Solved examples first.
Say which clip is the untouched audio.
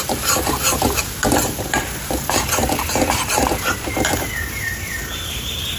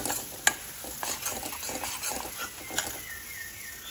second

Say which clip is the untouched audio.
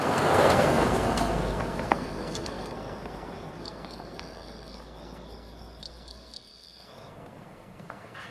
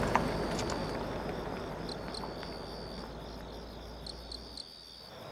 second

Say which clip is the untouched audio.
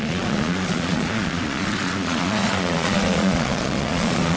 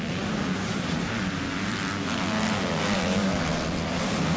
second